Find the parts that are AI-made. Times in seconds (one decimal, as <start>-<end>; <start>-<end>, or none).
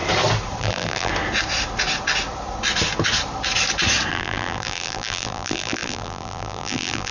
0.6-1.1; 4.1-7.1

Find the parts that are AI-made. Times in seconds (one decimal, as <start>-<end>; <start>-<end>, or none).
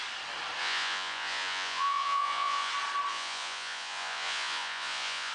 0.6-2.7; 3.1-5.3